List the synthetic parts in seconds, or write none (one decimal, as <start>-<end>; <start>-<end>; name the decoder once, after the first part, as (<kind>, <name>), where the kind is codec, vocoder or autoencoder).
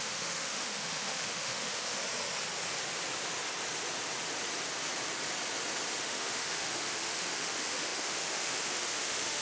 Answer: 0.0-2.0 (autoencoder, DAC-VAE); 6.0-9.4